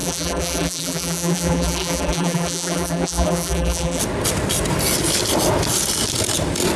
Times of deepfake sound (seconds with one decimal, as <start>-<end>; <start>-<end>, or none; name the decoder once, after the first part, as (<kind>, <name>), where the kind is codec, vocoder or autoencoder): 0.0-4.0 (vocoder, BigVGAN v2)